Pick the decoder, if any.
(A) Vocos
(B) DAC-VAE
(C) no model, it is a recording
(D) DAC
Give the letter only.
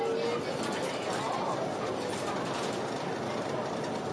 C